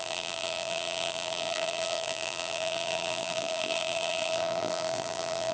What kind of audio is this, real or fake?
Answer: fake